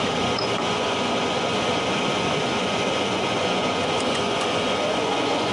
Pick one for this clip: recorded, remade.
remade